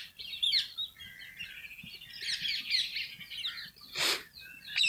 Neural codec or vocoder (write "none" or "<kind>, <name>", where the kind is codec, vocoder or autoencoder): none